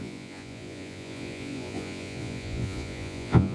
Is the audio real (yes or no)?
no